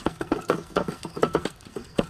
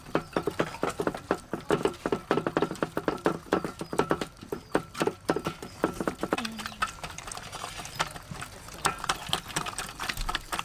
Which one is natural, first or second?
second